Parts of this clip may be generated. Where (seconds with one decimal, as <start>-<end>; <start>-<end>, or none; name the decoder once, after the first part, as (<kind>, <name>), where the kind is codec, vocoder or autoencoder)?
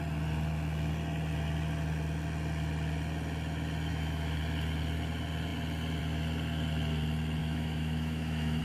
3.9-4.4 (autoencoder, DAC-VAE); 7.4-8.6